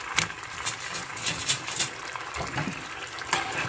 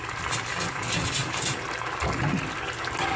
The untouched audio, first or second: second